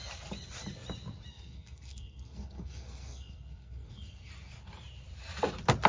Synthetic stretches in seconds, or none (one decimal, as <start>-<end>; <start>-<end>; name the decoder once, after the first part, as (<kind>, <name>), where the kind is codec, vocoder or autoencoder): 1.3-4.3 (codec, SNAC)